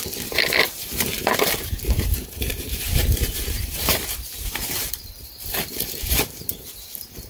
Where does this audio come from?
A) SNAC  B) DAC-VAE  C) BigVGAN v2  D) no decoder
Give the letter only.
C